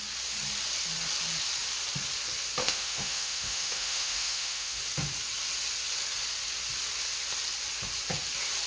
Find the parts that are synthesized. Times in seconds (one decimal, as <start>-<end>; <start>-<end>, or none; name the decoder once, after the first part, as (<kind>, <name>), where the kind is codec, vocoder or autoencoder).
2.6-4.8 (autoencoder, DAC-VAE)